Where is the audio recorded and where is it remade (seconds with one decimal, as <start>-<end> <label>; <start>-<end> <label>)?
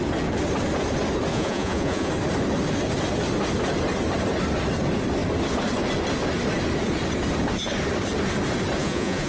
0.0-1.3 recorded; 1.3-2.1 remade; 2.1-8.8 recorded; 8.8-9.3 remade